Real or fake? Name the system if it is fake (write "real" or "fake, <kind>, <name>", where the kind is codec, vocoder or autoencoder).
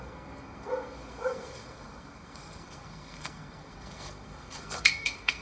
fake, codec, SNAC